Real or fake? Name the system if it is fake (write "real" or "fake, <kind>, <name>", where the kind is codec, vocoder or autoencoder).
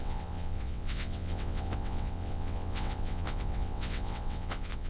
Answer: fake, vocoder, WaveNeXt